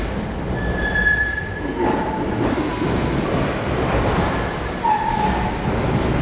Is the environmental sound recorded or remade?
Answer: recorded